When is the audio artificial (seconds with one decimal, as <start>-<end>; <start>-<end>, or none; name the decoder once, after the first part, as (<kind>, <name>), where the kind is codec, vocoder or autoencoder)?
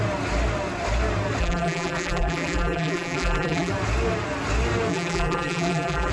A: 1.4-3.7 (vocoder, BigVGAN v2); 4.9-6.1